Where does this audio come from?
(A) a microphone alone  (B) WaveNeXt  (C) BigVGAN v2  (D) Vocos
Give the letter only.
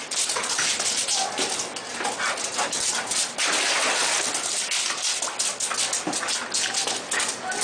A